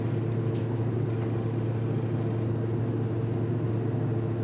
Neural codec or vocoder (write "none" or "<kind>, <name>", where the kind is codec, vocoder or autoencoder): none